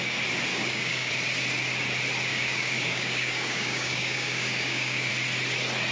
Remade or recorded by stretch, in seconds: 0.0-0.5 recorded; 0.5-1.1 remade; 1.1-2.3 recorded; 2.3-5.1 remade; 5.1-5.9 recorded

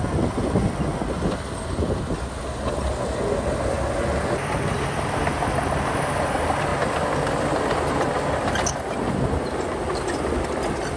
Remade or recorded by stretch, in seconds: 0.0-11.0 recorded